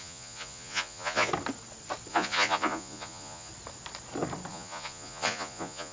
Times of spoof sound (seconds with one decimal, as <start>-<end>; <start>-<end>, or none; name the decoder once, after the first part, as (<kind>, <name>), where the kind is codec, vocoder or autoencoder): 0.0-1.3 (vocoder, Vocos); 2.1-3.5; 4.5-5.9